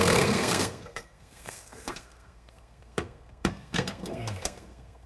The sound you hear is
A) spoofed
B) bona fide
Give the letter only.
A